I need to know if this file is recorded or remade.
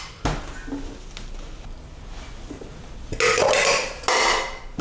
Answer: recorded